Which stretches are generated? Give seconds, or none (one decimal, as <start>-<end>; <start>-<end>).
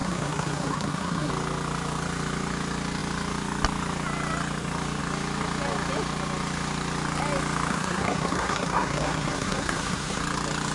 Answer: 0.0-1.3; 7.7-10.2